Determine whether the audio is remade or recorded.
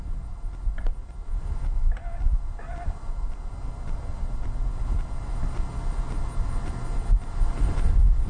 recorded